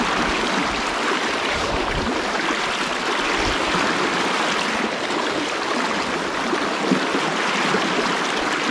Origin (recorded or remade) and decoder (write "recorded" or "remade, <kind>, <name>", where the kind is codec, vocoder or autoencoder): recorded